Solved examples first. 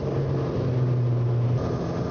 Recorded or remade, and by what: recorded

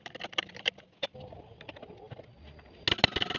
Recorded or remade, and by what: recorded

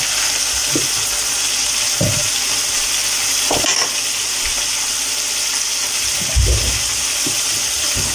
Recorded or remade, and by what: recorded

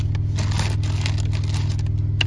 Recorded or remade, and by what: recorded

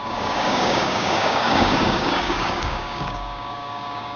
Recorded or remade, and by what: remade, codec, DAC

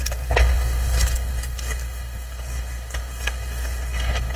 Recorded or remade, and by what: remade, codec, DAC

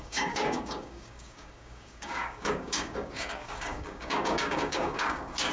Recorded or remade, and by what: remade, codec, DAC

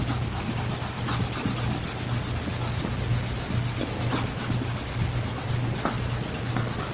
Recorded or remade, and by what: recorded